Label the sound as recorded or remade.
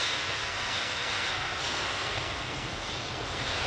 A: remade